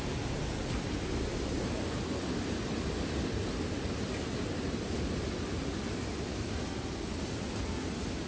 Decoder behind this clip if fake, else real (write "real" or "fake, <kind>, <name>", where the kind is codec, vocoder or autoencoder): real